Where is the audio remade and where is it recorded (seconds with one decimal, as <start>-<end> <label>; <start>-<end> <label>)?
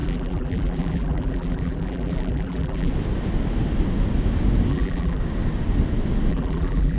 0.0-2.9 remade; 2.9-4.7 recorded; 4.7-5.2 remade; 5.2-6.3 recorded; 6.3-7.0 remade